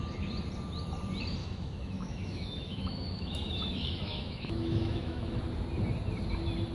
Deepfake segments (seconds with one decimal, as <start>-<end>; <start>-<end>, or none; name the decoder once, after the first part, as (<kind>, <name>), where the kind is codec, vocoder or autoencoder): 1.4-5.4 (autoencoder, DAC-VAE)